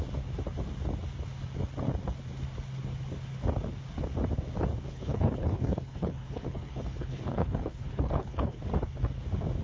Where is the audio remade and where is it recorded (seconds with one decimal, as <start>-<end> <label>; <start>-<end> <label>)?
0.0-4.9 recorded; 4.9-8.6 remade; 8.6-9.6 recorded